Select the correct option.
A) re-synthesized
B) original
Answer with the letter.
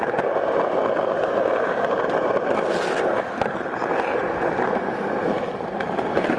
B